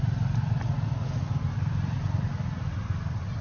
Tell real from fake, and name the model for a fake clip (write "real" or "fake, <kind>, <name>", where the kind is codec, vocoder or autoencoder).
real